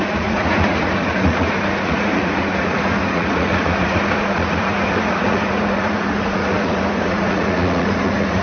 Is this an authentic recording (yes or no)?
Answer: no